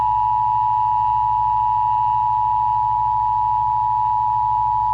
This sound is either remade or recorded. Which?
recorded